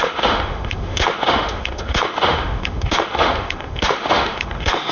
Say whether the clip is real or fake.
fake